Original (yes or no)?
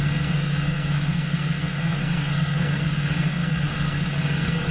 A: no